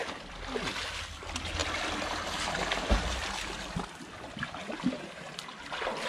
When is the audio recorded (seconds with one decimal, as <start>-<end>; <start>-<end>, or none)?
0.8-1.6; 5.3-6.1